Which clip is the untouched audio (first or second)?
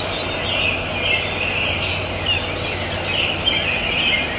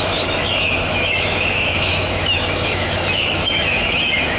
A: first